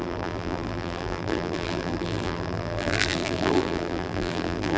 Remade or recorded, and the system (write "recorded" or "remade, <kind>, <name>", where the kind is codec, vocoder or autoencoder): remade, vocoder, BigVGAN v2